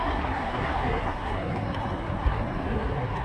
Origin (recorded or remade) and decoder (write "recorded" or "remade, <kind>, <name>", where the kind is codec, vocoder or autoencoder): remade, codec, SNAC